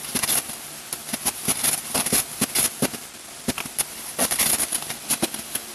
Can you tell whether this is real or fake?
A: real